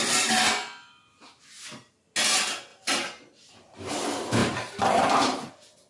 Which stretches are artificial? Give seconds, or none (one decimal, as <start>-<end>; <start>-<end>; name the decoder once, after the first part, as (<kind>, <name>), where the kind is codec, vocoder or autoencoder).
2.7-3.9 (vocoder, BigVGAN v2); 4.4-5.0